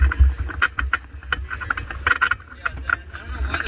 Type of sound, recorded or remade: recorded